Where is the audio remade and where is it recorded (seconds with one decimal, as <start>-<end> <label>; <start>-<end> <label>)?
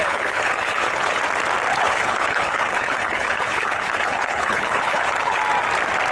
0.0-1.2 remade; 1.2-1.7 recorded; 1.7-5.4 remade; 5.4-6.1 recorded